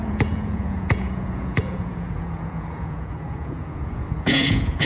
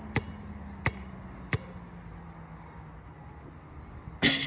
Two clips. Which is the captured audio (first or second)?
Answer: second